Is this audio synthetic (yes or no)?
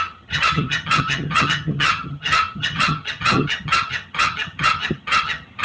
yes